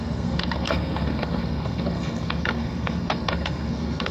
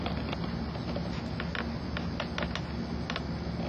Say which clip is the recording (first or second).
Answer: second